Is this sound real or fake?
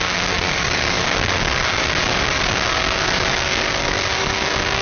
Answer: fake